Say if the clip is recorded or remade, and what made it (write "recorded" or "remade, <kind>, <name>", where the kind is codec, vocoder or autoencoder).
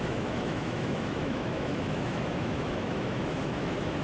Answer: remade, autoencoder, DAC-VAE